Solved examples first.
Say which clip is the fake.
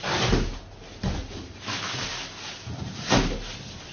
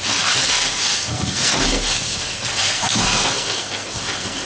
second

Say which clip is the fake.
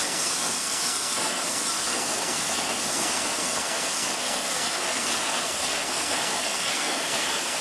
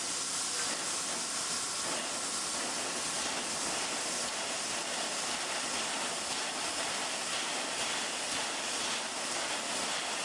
first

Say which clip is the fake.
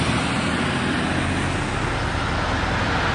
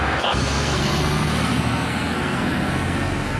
second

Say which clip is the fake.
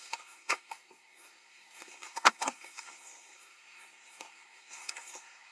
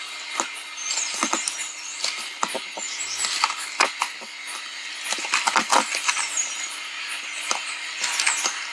first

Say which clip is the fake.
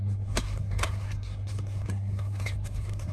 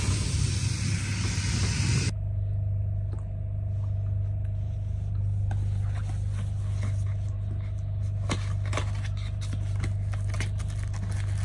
first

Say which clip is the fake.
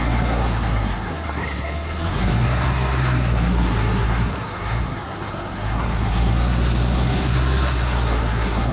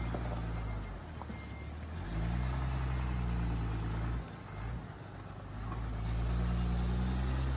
first